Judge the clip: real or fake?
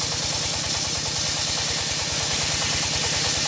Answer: real